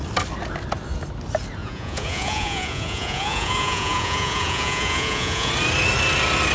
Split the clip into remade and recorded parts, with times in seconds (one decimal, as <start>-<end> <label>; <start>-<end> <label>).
0.0-1.6 recorded; 1.6-5.5 remade; 5.5-6.5 recorded